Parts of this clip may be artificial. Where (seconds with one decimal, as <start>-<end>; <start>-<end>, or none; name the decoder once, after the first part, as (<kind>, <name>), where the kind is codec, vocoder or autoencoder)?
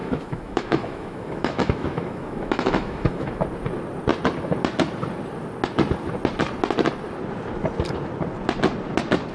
0.0-3.4 (autoencoder, DAC-VAE)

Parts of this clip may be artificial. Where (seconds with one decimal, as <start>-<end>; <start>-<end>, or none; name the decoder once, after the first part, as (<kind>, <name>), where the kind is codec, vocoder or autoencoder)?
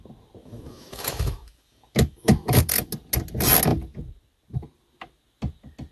0.4-2.6 (autoencoder, DAC-VAE)